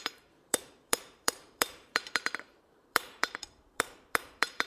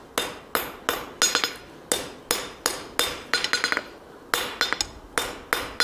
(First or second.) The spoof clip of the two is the first